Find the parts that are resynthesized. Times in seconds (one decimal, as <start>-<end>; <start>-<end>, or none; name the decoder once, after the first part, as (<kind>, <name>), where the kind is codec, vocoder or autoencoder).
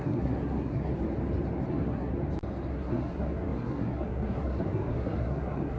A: 0.0-0.9 (codec, SNAC); 1.7-2.1; 2.7-5.8